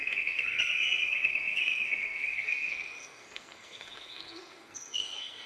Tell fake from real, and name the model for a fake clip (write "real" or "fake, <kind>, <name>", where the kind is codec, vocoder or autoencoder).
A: fake, codec, SNAC